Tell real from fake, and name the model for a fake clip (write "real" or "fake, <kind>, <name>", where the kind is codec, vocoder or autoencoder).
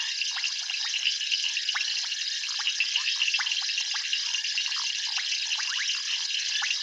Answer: fake, vocoder, BigVGAN v2